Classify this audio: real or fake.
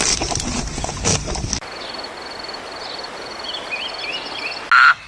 real